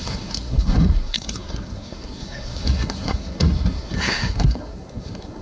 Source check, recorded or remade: remade